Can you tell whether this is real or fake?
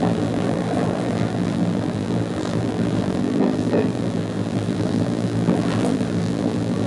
fake